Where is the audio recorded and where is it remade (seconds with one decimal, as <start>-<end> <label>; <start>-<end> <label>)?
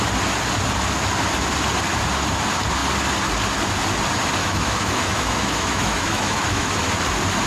0.0-4.4 recorded; 4.4-6.7 remade; 6.7-7.5 recorded